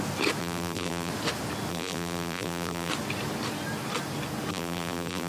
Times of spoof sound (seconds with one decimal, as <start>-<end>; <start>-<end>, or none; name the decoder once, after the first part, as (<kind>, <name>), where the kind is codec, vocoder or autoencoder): 0.4-1.1 (vocoder, BigVGAN v2); 1.7-2.9; 4.5-5.3